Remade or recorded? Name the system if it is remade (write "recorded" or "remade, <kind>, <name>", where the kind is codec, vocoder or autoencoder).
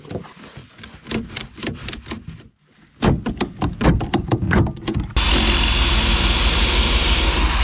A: recorded